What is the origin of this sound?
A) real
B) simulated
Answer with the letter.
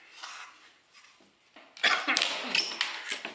A